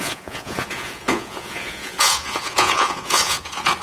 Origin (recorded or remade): remade